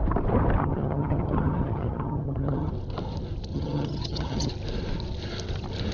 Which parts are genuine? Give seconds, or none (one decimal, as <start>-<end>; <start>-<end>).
0.0-0.6; 2.7-3.5; 4.5-5.9